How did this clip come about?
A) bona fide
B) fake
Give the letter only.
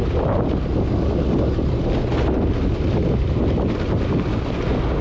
A